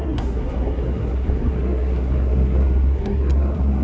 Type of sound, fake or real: fake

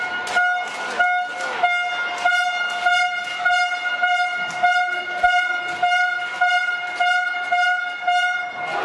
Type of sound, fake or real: real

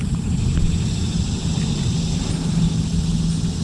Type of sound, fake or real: real